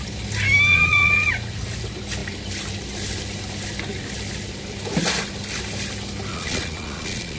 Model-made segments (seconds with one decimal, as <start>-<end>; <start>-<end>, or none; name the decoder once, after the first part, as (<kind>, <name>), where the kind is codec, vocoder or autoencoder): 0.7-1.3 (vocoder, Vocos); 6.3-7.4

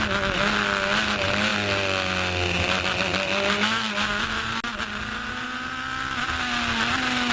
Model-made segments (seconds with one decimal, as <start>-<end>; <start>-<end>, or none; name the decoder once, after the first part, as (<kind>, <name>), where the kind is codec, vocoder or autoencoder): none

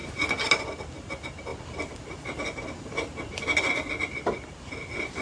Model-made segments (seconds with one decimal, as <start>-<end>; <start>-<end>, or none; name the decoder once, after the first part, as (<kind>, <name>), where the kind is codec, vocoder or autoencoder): none

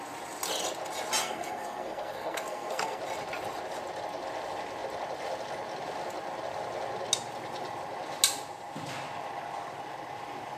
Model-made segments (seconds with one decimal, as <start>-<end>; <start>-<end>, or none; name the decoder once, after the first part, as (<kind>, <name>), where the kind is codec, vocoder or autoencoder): 1.2-3.0 (codec, SNAC)

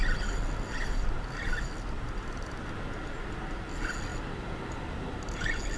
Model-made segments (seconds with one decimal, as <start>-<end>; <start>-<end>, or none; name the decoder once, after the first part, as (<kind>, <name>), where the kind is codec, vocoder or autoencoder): none

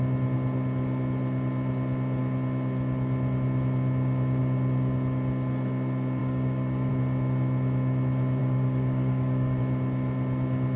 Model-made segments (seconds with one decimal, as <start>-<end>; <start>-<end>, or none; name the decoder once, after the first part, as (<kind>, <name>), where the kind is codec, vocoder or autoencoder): 6.2-6.9 (codec, DAC); 8.4-9.6

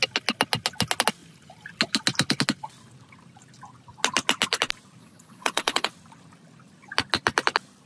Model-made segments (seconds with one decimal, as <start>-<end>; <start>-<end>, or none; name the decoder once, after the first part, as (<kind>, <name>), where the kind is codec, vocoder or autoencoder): 5.0-5.9 (vocoder, WaveNeXt)